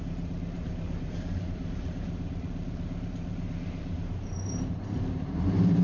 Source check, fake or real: fake